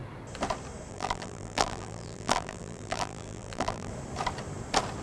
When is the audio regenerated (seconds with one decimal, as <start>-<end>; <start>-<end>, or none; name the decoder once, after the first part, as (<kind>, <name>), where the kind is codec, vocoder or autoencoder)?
0.9-3.9 (vocoder, BigVGAN v2)